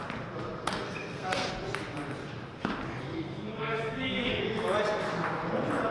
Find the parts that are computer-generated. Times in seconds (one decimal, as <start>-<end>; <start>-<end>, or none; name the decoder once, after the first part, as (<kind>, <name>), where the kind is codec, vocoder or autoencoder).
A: 0.6-1.5 (codec, SNAC); 3.1-4.4